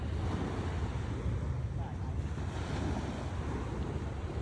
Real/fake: real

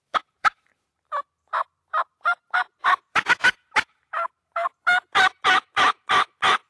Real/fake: fake